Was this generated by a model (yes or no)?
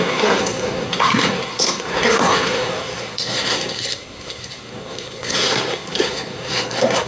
yes